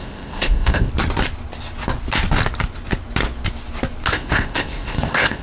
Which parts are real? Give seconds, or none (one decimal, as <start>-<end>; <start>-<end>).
0.9-4.1